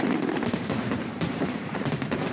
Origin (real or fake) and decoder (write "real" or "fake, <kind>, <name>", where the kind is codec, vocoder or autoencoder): fake, vocoder, BigVGAN v2